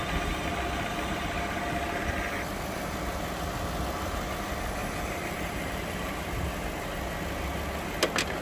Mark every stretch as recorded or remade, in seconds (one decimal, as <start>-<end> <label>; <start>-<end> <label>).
0.0-4.8 recorded; 4.8-6.1 remade; 6.1-8.4 recorded

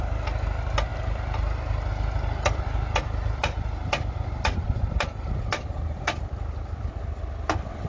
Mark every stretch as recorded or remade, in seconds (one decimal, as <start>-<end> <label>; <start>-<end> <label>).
0.0-7.9 recorded

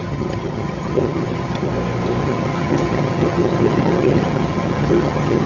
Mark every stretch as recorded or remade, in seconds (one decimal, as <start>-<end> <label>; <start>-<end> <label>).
0.0-1.7 remade; 1.7-2.2 recorded; 2.2-5.5 remade

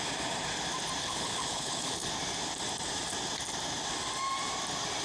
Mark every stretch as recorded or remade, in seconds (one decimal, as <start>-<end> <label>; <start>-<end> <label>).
0.0-1.0 recorded; 1.0-2.1 remade; 2.1-5.0 recorded

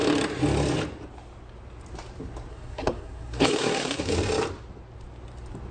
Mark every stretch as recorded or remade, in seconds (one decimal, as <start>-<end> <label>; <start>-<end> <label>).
0.0-2.5 recorded; 2.5-4.1 remade; 4.1-5.7 recorded

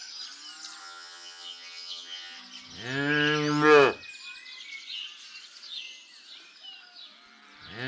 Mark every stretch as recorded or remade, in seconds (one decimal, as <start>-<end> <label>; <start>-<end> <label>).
0.0-0.8 recorded; 0.8-2.4 remade; 2.4-7.9 recorded

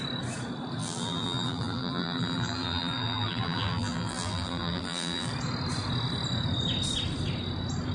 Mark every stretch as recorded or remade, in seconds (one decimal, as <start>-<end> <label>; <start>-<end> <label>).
0.0-0.8 recorded; 0.8-5.3 remade; 5.3-7.9 recorded

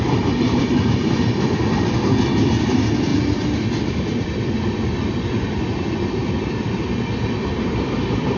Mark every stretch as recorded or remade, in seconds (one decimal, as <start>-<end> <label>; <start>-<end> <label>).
0.0-8.4 remade